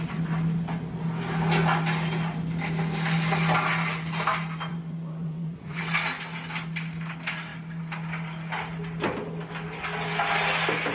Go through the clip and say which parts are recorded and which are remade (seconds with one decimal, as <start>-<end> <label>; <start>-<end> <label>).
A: 0.0-4.7 recorded; 4.7-5.8 remade; 5.8-10.9 recorded